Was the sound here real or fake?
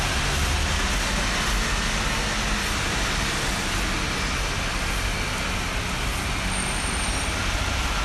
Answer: real